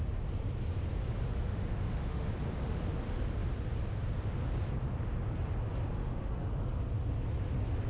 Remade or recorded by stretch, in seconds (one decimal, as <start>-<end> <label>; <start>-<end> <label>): 0.0-1.5 recorded; 1.5-2.3 remade; 2.3-6.0 recorded; 6.0-6.5 remade; 6.5-7.9 recorded